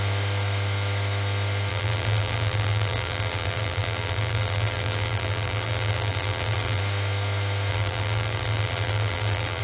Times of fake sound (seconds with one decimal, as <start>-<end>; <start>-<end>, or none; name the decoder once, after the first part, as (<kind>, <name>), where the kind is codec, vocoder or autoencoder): 1.7-6.8 (vocoder, BigVGAN v2); 7.7-9.6